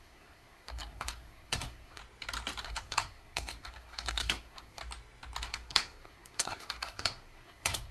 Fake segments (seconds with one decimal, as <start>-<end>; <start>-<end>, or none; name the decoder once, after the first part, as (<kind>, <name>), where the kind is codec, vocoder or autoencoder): 0.0-2.0 (codec, SNAC); 2.6-4.8; 5.4-7.9